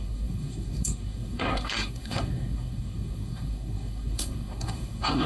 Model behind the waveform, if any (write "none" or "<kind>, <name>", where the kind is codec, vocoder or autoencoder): codec, SNAC